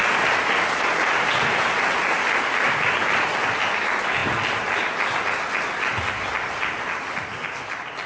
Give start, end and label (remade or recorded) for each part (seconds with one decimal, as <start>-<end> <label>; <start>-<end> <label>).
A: 0.0-8.1 recorded